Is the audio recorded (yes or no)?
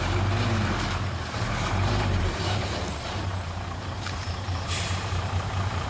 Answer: no